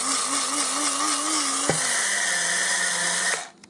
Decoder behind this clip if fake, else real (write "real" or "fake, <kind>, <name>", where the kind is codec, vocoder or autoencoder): real